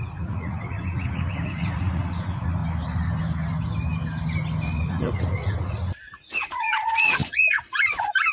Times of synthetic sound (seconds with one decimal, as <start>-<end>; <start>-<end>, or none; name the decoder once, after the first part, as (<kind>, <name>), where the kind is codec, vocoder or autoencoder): 0.0-2.6 (vocoder, Vocos); 4.9-8.3